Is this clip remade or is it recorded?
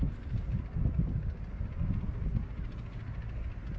recorded